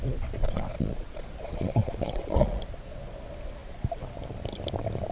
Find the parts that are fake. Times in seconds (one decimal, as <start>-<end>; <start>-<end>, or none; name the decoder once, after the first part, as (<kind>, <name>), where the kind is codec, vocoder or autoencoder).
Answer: 0.4-2.6 (vocoder, Vocos)